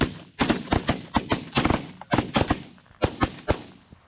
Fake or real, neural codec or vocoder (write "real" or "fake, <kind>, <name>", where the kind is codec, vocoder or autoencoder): real